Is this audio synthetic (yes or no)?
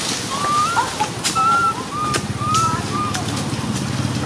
no